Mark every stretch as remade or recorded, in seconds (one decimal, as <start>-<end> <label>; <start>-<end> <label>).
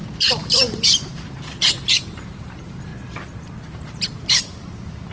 0.0-2.9 remade; 2.9-3.7 recorded; 3.7-5.1 remade